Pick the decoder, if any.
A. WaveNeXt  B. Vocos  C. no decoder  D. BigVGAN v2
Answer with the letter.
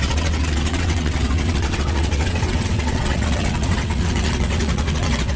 A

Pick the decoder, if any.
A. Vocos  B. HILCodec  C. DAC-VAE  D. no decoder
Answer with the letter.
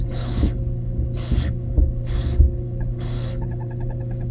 B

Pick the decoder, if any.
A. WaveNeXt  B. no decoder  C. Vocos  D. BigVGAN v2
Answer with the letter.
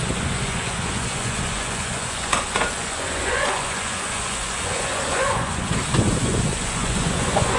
C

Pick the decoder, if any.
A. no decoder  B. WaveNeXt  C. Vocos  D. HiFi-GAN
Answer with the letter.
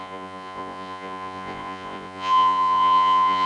C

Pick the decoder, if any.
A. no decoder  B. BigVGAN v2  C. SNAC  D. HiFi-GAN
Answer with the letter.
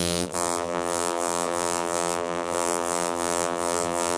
B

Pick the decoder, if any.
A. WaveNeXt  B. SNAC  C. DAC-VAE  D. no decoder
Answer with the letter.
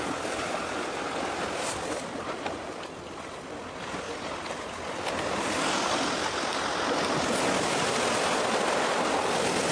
D